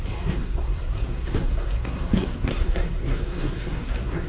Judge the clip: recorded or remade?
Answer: remade